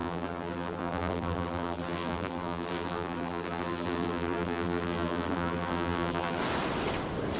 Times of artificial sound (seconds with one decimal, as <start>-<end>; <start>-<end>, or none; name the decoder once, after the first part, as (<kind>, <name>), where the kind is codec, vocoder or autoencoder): 0.0-6.4 (vocoder, BigVGAN v2)